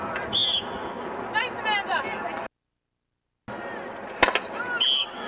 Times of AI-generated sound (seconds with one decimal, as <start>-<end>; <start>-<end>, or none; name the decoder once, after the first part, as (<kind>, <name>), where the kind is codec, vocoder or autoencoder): none